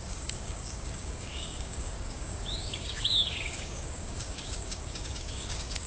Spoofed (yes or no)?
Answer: yes